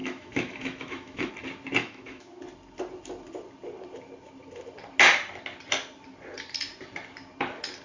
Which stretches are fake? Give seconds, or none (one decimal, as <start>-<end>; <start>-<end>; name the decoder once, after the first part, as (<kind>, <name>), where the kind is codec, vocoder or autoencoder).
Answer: 0.0-1.3 (autoencoder, DAC-VAE); 1.8-2.4